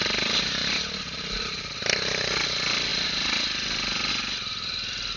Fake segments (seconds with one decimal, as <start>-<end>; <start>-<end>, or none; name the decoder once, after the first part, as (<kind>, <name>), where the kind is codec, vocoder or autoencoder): 0.6-1.5 (vocoder, BigVGAN v2)